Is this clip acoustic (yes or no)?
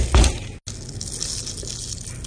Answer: yes